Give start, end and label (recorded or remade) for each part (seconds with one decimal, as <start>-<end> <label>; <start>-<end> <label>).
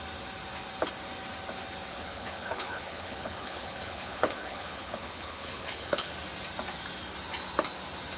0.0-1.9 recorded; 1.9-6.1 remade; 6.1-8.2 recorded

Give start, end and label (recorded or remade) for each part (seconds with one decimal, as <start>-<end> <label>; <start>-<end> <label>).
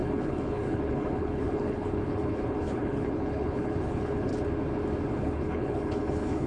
0.0-4.3 remade; 4.3-5.1 recorded; 5.1-6.5 remade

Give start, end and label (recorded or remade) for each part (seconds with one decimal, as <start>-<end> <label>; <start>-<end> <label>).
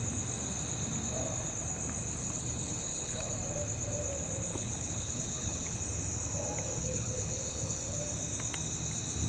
0.0-2.2 recorded; 2.2-3.3 remade; 3.3-4.5 recorded; 4.5-5.8 remade; 5.8-6.8 recorded; 6.8-8.0 remade; 8.0-9.3 recorded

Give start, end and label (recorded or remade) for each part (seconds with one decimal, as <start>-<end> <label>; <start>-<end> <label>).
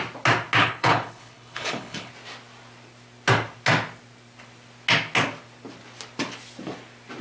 0.0-0.6 recorded; 0.6-2.1 remade; 2.1-7.2 recorded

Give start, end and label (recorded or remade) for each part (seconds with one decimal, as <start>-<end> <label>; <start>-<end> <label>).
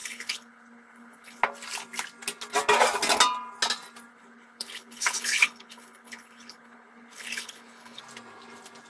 0.0-1.4 remade; 1.4-4.1 recorded; 4.1-8.0 remade; 8.0-8.9 recorded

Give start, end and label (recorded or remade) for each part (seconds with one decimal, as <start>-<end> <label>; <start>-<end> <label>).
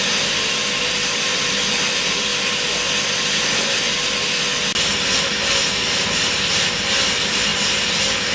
0.0-8.3 recorded